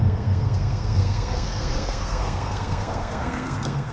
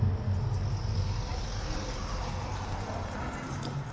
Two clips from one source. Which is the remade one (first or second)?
first